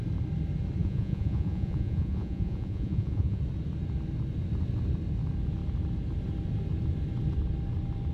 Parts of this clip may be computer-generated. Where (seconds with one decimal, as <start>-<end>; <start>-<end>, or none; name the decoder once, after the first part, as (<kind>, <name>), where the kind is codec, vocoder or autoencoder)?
0.8-3.4 (vocoder, Vocos)